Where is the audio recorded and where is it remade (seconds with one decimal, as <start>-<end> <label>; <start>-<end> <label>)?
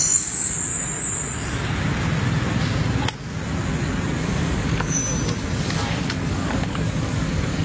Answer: 0.0-0.7 remade; 0.7-4.2 recorded; 4.2-5.0 remade; 5.0-5.6 recorded; 5.6-7.6 remade